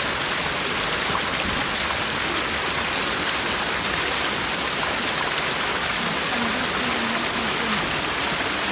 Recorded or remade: recorded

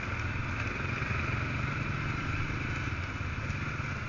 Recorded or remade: recorded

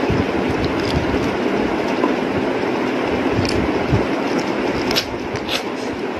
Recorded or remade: recorded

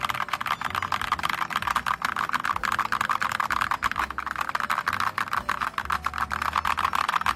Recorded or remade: recorded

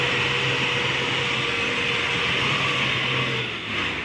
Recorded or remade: recorded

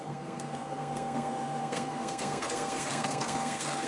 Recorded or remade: remade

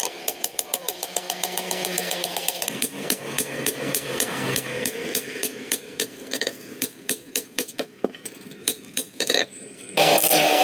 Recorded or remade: remade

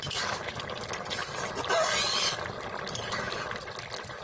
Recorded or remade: recorded